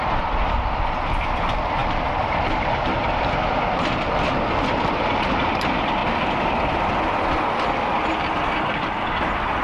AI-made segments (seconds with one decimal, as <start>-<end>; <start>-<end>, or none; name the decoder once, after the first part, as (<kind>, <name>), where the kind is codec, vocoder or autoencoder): none